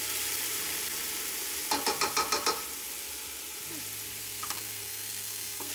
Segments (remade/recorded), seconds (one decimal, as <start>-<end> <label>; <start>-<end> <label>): 0.0-4.2 recorded; 4.2-5.7 remade